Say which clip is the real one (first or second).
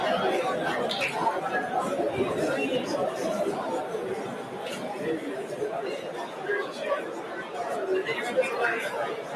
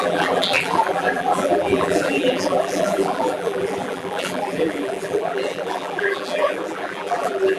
first